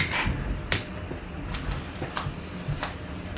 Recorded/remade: recorded